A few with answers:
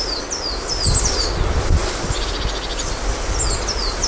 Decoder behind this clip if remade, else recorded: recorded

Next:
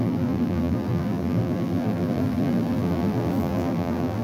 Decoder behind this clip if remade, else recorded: remade, vocoder, BigVGAN v2